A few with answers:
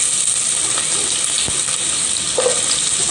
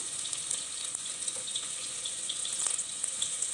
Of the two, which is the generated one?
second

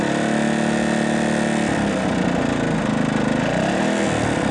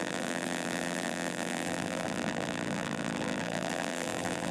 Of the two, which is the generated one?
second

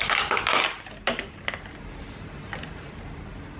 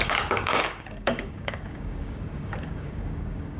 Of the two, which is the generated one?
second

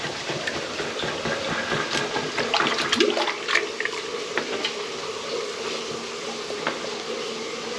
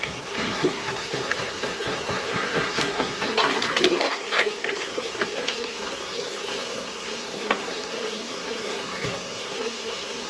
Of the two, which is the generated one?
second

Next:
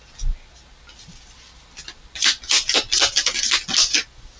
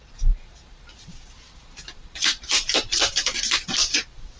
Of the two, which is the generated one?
second